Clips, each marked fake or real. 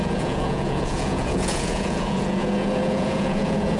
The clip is fake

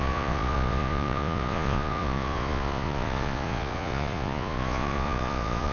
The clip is fake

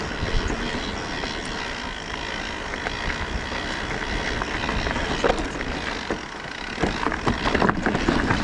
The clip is real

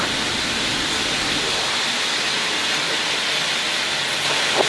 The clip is real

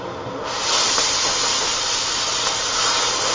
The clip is real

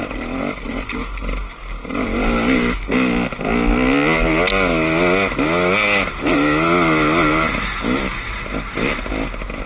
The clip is real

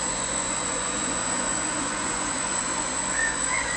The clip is fake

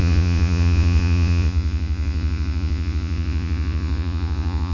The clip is fake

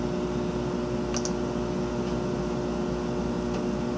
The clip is real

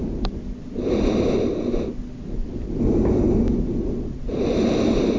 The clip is real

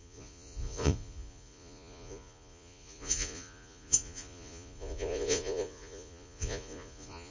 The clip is fake